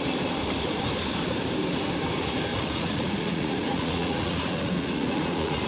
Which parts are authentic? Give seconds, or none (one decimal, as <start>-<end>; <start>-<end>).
0.0-2.5